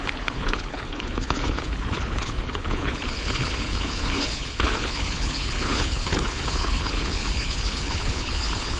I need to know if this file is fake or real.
fake